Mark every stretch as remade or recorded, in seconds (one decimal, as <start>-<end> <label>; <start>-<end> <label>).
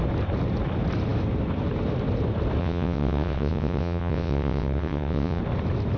0.0-2.6 recorded; 2.6-5.4 remade; 5.4-6.0 recorded